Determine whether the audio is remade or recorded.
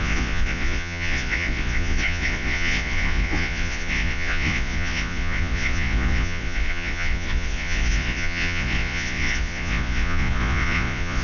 remade